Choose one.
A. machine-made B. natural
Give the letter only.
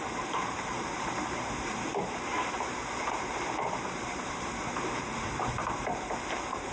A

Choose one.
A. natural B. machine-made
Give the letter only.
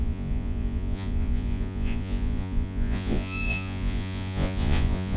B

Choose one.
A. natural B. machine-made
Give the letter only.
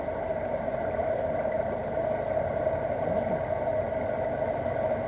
A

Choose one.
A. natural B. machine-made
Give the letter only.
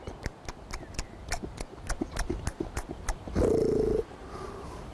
A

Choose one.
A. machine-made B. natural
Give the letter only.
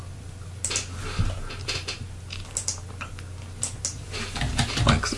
B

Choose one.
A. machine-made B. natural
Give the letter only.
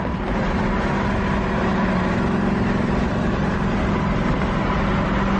B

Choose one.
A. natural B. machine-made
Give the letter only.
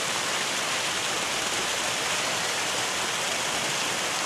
A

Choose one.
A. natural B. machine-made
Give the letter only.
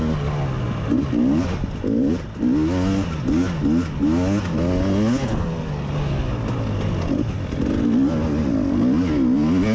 A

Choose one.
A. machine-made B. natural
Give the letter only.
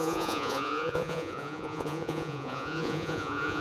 A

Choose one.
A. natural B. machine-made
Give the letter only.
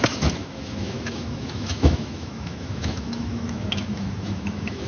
B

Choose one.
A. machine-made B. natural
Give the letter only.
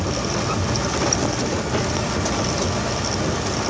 B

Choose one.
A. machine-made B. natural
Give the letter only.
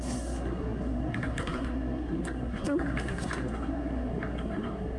A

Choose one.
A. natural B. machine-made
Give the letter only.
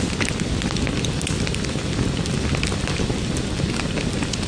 A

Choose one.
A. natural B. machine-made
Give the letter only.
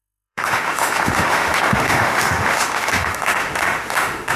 B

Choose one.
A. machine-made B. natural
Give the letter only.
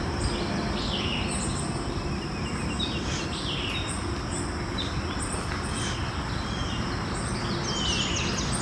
B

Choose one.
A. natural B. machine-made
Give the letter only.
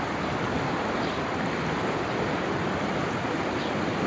A